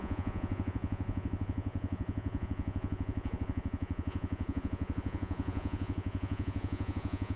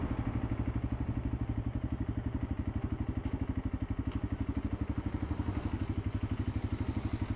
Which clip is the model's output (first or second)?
first